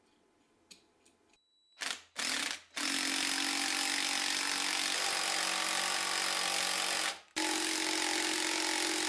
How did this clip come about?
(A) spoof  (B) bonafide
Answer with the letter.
B